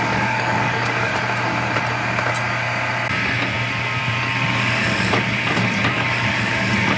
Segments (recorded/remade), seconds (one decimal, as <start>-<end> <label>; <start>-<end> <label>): 0.0-1.1 remade; 1.1-4.0 recorded; 4.0-7.0 remade